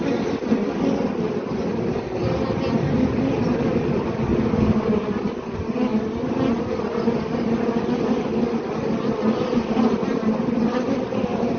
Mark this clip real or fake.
real